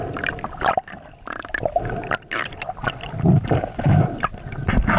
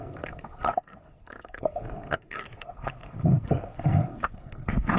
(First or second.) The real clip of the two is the first